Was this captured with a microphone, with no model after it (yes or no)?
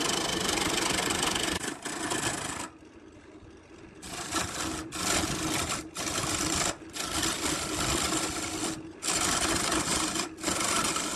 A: yes